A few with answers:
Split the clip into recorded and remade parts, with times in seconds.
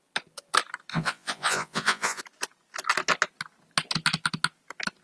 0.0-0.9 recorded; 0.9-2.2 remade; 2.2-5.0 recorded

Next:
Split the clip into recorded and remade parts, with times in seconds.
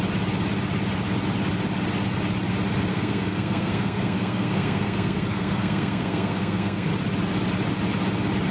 0.0-2.9 recorded; 2.9-6.9 remade; 6.9-8.5 recorded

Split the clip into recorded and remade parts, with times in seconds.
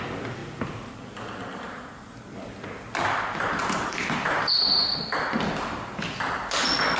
0.0-1.5 recorded; 1.5-2.0 remade; 2.0-3.6 recorded; 3.6-5.0 remade; 5.0-7.0 recorded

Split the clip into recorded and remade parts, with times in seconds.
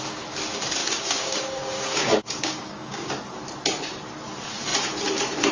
0.0-0.8 recorded; 0.8-3.1 remade; 3.1-5.5 recorded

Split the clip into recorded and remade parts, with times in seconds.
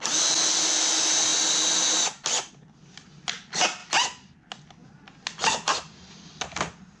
0.0-7.0 recorded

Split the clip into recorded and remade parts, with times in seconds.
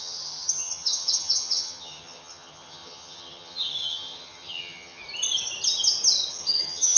0.0-5.0 remade; 5.0-6.3 recorded; 6.3-7.0 remade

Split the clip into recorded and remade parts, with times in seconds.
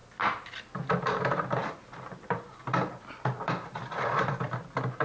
0.0-1.6 recorded; 1.6-4.6 remade; 4.6-5.0 recorded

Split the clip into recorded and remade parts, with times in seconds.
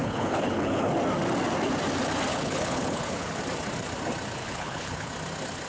0.0-0.9 remade; 0.9-2.3 recorded; 2.3-3.4 remade; 3.4-4.4 recorded; 4.4-5.1 remade; 5.1-5.7 recorded